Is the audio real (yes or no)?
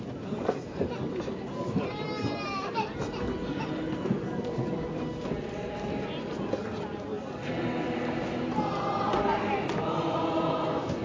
yes